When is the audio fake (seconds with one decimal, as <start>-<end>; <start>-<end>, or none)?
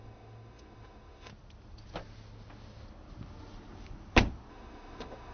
0.0-1.3; 4.5-5.3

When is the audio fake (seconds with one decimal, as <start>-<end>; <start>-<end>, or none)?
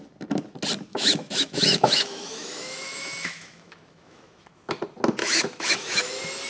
0.9-4.8; 5.2-6.1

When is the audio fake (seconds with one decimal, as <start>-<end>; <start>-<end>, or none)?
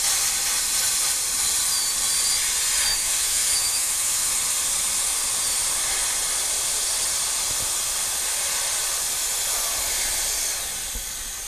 2.9-4.3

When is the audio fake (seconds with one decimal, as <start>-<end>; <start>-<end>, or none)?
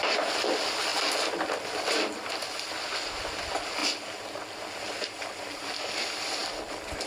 none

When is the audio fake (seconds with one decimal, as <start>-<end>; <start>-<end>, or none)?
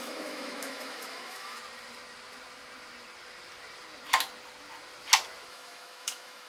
0.0-1.6; 5.5-6.5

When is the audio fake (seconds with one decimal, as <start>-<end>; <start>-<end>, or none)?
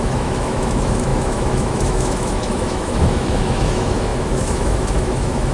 0.0-5.5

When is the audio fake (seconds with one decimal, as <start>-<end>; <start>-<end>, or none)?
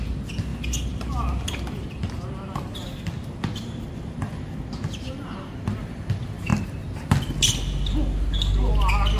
none